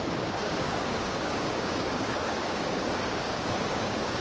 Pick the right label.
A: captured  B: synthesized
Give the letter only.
B